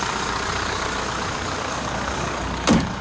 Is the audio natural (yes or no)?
no